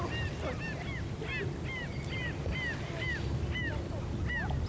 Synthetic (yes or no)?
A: no